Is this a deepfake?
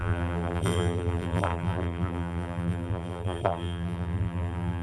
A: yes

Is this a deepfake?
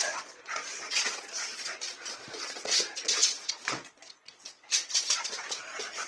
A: yes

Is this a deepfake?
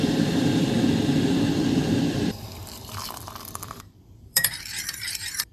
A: yes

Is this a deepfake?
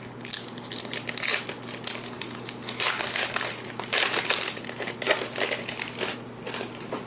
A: no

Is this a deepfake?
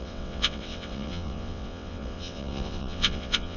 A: yes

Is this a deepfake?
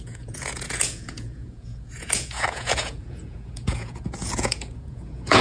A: yes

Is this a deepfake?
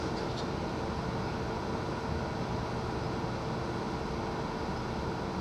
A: no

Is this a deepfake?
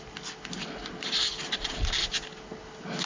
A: no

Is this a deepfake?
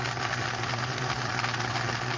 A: no